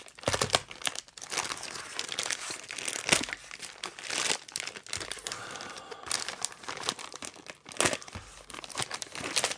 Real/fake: real